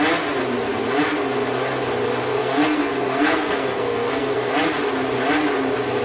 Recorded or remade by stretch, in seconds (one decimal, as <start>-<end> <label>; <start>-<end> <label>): 0.0-2.4 recorded; 2.4-4.5 remade; 4.5-6.0 recorded